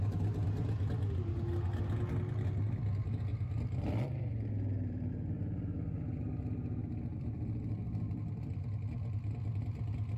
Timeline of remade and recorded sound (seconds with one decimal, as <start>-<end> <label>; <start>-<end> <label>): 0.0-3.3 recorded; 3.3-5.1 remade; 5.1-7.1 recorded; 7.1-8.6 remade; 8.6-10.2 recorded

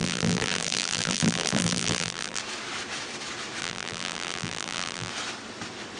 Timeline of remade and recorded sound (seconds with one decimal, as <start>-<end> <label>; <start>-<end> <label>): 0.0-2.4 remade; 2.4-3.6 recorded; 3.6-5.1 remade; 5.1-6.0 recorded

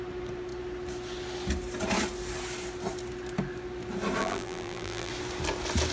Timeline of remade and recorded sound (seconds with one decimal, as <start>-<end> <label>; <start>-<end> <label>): 0.0-4.2 recorded; 4.2-5.1 remade; 5.1-5.9 recorded